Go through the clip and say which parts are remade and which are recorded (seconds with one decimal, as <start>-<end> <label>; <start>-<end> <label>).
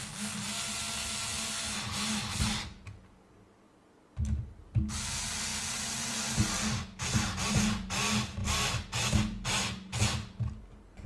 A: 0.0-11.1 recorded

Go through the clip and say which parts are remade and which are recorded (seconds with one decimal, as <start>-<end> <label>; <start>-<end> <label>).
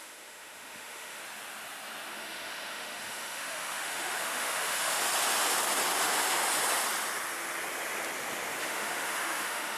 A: 0.0-1.2 remade; 1.2-2.1 recorded; 2.1-5.0 remade; 5.0-8.6 recorded; 8.6-9.8 remade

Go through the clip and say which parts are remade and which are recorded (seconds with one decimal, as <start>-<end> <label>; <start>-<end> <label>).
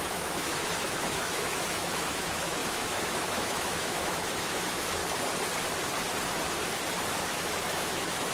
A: 0.0-5.0 remade; 5.0-7.2 recorded; 7.2-8.3 remade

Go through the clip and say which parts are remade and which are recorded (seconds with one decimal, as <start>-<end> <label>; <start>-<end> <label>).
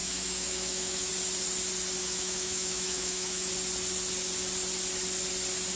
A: 0.0-1.1 remade; 1.1-2.0 recorded; 2.0-3.5 remade; 3.5-5.8 recorded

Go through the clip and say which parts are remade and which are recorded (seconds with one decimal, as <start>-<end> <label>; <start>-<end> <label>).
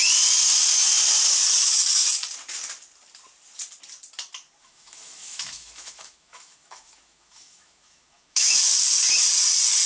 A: 0.0-4.6 recorded; 4.6-8.6 remade; 8.6-9.9 recorded